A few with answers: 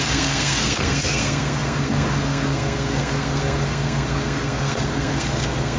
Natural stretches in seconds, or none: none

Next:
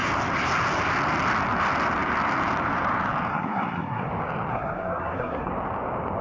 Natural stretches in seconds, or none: 0.0-3.3; 4.1-4.5; 5.5-6.2

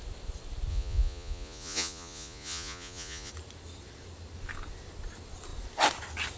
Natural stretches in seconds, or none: 0.0-0.7; 3.3-6.4

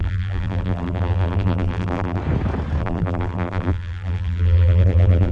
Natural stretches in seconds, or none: 2.2-2.8

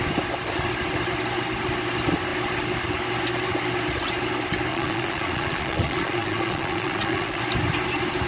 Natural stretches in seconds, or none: 0.0-4.7; 7.4-8.3

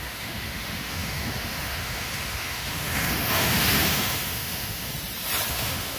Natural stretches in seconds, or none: 4.9-5.5

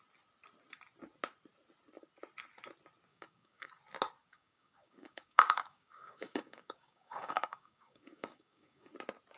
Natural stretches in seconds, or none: 0.0-3.1; 3.7-4.2; 8.9-9.4